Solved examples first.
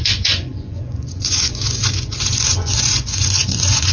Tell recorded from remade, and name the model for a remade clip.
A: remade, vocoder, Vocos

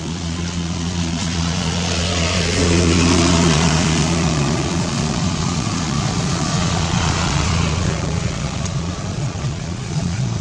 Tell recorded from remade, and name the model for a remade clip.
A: remade, vocoder, Vocos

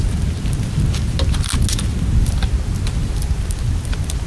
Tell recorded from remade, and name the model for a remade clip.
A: recorded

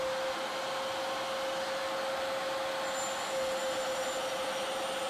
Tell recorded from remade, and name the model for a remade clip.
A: recorded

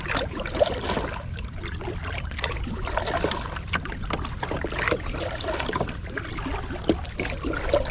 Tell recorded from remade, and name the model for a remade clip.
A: recorded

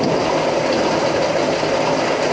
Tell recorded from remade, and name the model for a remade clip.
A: recorded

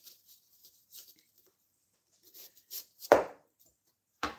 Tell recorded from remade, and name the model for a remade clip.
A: remade, vocoder, BigVGAN v2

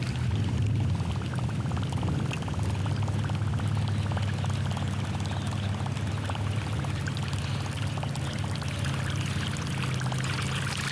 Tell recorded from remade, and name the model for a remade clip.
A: recorded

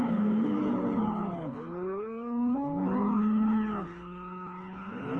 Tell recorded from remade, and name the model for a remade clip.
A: remade, codec, HILCodec